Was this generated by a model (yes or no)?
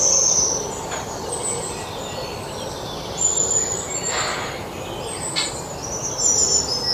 no